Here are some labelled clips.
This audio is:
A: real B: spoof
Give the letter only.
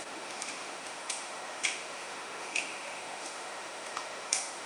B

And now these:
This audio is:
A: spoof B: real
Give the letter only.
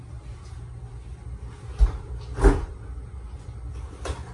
B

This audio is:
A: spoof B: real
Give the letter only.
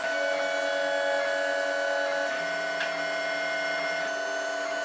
B